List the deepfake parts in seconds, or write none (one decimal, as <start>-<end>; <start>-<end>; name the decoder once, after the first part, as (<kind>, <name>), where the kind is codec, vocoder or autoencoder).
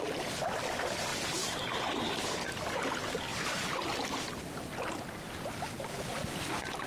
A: 1.1-2.6 (vocoder, BigVGAN v2); 3.3-3.9